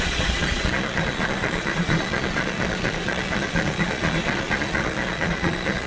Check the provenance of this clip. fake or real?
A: fake